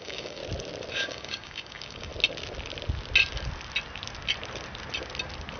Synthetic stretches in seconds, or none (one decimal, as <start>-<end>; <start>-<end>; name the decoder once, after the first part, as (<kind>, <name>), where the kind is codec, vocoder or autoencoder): 0.0-0.4 (codec, DAC); 0.9-2.1